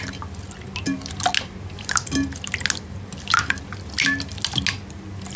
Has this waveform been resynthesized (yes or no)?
no